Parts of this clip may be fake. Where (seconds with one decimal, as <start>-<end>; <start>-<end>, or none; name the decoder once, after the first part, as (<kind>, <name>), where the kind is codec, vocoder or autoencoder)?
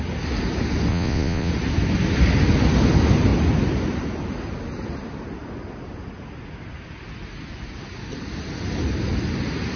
0.9-1.5 (vocoder, Vocos)